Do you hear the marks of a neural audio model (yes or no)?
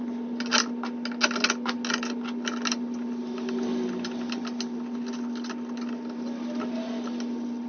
no